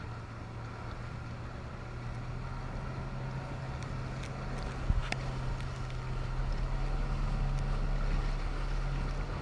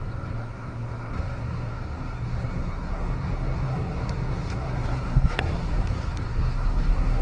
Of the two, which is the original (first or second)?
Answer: first